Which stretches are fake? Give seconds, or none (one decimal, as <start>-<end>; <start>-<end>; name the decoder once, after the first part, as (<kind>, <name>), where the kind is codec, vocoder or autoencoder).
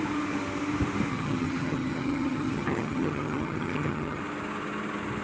1.1-4.2 (vocoder, HiFi-GAN)